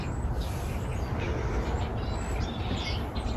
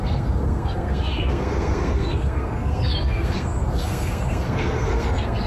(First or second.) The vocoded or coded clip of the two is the second